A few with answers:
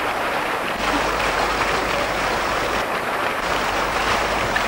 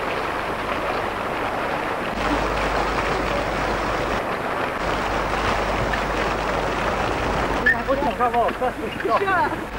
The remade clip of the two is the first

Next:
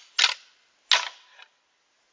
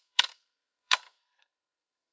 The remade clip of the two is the second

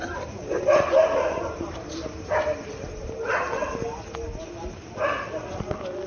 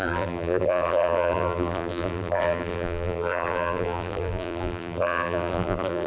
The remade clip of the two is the second